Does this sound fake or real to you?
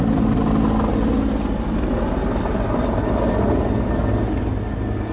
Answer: real